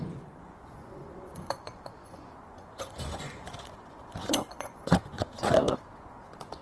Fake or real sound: fake